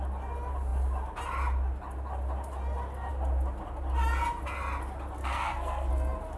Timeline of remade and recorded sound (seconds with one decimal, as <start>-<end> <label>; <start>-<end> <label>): 0.0-5.2 recorded; 5.2-5.9 remade; 5.9-6.4 recorded